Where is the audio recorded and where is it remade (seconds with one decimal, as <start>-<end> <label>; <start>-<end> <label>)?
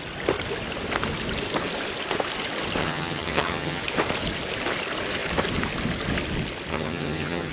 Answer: 0.0-2.8 recorded; 2.8-3.8 remade; 3.8-6.7 recorded; 6.7-7.5 remade